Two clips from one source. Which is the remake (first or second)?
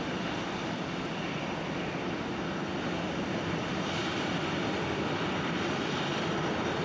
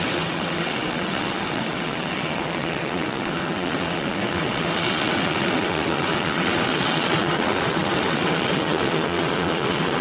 second